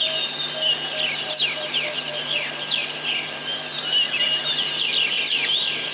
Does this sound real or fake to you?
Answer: real